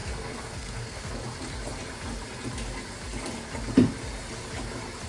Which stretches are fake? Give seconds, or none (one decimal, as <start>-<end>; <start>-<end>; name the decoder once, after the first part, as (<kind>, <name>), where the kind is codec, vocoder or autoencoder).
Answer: 0.0-1.1 (codec, SNAC)